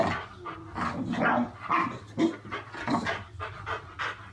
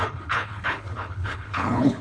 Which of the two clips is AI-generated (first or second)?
second